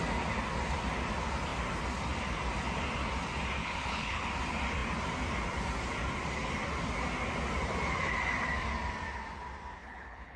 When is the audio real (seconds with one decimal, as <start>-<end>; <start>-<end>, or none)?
0.0-3.6; 4.3-9.8